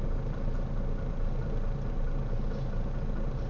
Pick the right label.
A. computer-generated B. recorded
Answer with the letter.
B